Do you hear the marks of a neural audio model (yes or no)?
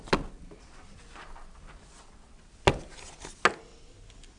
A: no